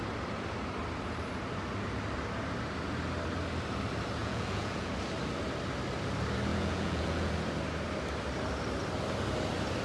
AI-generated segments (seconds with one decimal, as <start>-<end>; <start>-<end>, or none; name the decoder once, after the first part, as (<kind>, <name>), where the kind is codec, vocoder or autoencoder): 4.2-4.9 (vocoder, Vocos); 6.5-7.3